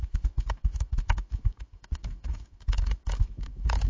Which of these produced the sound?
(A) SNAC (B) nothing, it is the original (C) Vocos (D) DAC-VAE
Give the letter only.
D